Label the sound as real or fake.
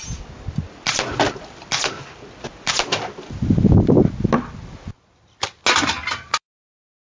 real